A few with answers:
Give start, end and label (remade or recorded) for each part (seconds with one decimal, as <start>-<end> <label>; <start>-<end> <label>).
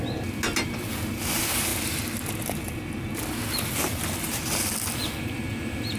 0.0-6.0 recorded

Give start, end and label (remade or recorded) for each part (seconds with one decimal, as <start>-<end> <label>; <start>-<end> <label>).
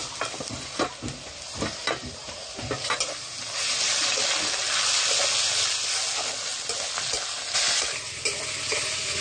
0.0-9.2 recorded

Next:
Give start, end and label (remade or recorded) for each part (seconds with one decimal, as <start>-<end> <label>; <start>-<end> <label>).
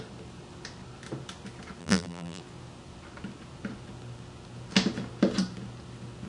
0.0-1.8 recorded; 1.8-2.4 remade; 2.4-6.3 recorded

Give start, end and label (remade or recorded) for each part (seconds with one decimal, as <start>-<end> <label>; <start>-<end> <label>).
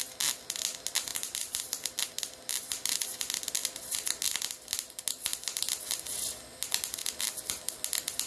0.0-1.1 recorded; 1.1-3.2 remade; 3.2-3.6 recorded; 3.6-4.4 remade; 4.4-5.3 recorded; 5.3-6.1 remade; 6.1-7.0 recorded; 7.0-7.8 remade; 7.8-8.3 recorded